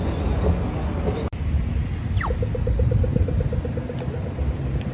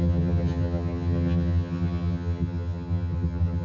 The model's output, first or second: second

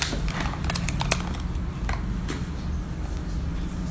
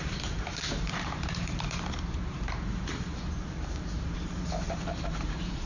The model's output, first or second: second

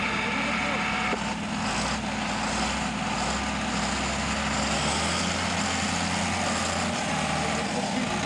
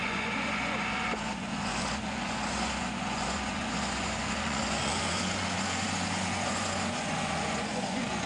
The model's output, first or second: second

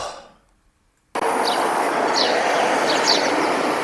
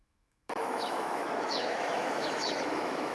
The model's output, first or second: second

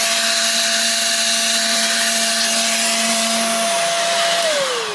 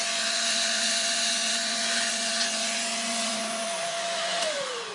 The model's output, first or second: second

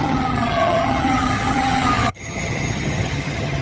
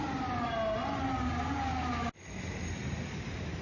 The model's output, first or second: first